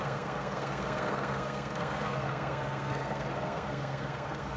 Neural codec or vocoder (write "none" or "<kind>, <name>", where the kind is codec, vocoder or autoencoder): codec, SNAC